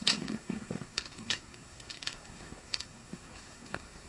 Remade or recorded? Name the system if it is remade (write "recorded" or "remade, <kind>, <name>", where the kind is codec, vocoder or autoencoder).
remade, codec, SNAC